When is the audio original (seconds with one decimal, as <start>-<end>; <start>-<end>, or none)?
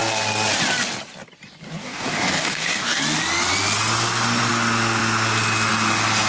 0.0-1.8; 3.0-6.3